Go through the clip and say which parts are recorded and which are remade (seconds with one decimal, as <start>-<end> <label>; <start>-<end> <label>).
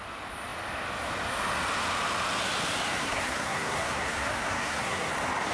0.0-3.0 recorded; 3.0-5.1 remade; 5.1-5.5 recorded